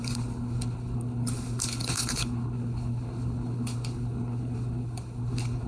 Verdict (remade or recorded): remade